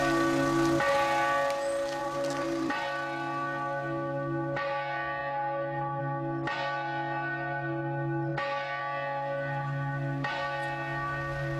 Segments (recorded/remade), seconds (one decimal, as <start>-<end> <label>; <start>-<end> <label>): 0.0-2.0 recorded; 2.0-2.7 remade; 2.7-11.6 recorded